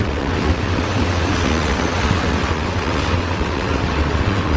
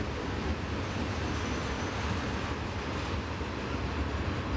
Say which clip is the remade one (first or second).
first